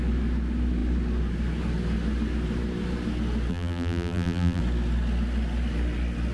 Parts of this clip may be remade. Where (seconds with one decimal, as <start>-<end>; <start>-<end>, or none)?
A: 3.5-4.6